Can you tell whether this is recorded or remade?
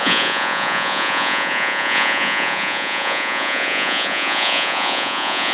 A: remade